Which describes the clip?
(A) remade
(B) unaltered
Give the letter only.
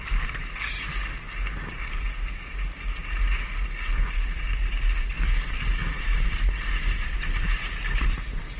B